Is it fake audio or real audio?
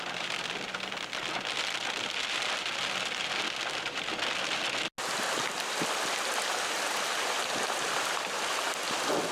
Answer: real